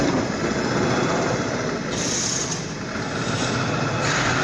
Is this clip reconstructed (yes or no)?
no